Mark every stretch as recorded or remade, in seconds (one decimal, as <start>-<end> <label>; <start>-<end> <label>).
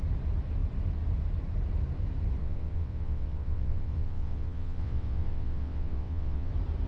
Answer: 0.0-2.4 recorded; 2.4-6.5 remade; 6.5-6.9 recorded